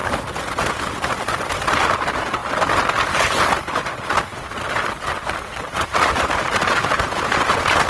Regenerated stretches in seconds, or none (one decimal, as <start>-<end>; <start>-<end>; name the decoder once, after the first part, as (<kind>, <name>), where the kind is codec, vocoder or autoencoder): 6.8-7.4 (vocoder, BigVGAN v2)